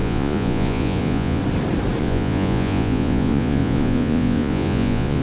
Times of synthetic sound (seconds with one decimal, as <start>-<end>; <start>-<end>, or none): 0.0-1.4; 2.0-5.2